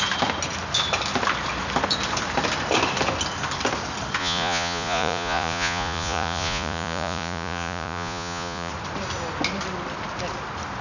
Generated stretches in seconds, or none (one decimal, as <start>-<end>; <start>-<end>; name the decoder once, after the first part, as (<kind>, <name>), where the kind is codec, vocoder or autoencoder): 4.2-8.7 (vocoder, Vocos)